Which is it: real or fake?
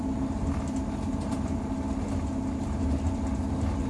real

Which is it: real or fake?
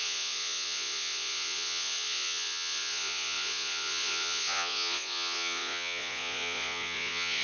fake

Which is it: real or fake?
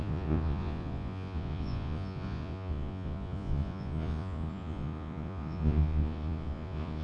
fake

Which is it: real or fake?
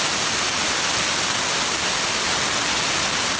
real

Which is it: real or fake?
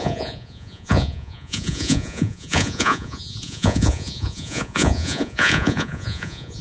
fake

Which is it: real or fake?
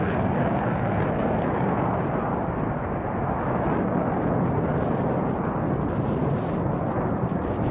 real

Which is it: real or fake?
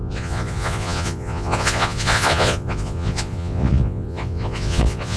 fake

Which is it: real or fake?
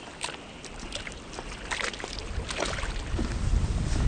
real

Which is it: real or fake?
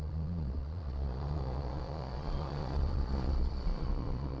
fake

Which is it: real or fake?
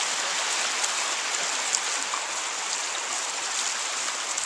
real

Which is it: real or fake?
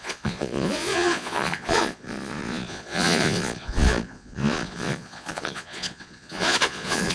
fake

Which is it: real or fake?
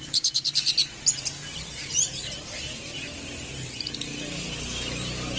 real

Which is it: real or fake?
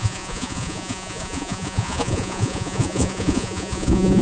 fake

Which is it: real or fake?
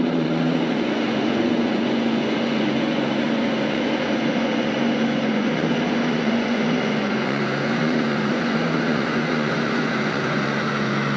fake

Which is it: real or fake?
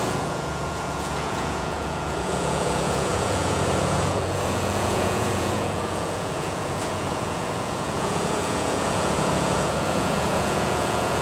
fake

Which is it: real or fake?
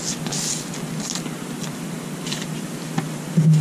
real